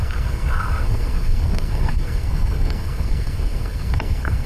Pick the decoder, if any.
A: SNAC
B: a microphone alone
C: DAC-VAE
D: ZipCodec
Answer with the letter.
A